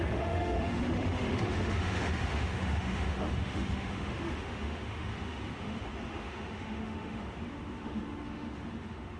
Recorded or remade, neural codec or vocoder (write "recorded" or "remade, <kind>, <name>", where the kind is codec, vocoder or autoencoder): remade, autoencoder, DAC-VAE